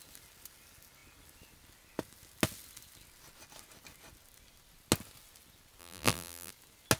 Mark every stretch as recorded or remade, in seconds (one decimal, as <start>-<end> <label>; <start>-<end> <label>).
0.0-5.8 recorded; 5.8-6.5 remade; 6.5-7.0 recorded